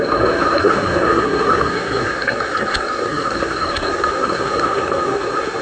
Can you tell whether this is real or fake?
fake